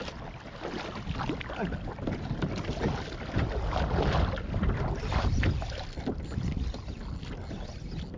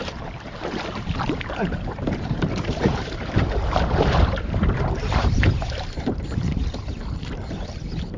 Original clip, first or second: first